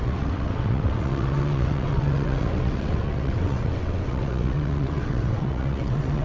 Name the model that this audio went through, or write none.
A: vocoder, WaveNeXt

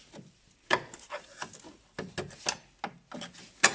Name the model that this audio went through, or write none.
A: none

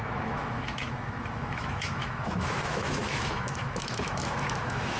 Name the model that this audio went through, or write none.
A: autoencoder, DAC-VAE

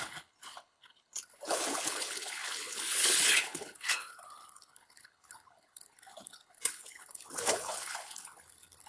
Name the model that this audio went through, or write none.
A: codec, HILCodec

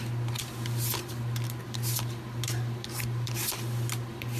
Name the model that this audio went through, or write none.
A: none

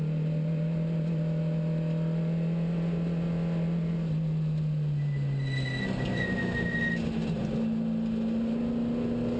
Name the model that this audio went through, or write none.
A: none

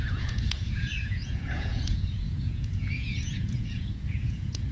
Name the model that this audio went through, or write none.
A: vocoder, Vocos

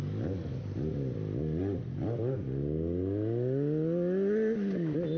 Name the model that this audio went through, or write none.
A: none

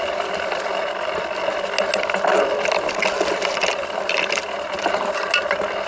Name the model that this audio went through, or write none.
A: none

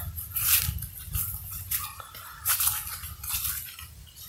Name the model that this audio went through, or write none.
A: none